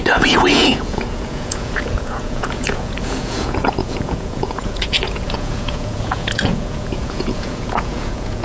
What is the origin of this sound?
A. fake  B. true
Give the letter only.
A